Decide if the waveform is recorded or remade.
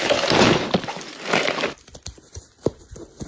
recorded